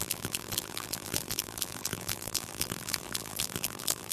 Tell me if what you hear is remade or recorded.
remade